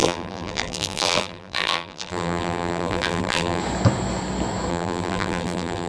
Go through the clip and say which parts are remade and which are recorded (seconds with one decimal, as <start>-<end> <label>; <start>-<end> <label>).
0.0-3.6 remade; 3.6-4.7 recorded; 4.7-5.9 remade